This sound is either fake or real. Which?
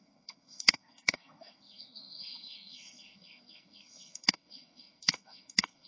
fake